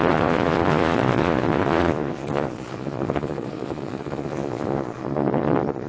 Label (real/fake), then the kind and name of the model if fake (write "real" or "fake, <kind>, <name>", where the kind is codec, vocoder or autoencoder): fake, vocoder, Vocos